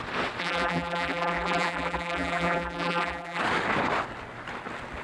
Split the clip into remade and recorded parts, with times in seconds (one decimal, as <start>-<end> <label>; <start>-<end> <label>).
0.0-0.4 recorded; 0.4-3.4 remade; 3.4-5.0 recorded